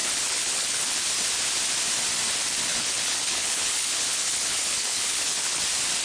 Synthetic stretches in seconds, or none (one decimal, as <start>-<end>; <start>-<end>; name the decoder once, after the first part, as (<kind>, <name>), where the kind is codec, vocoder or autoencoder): 0.0-1.0 (codec, HILCodec); 2.7-5.6